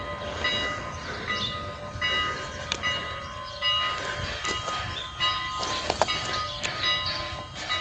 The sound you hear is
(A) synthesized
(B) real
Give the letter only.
B